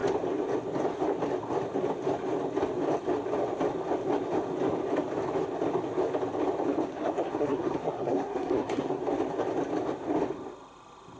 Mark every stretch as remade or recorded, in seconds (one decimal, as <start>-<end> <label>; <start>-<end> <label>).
0.0-6.9 recorded; 6.9-9.0 remade; 9.0-11.2 recorded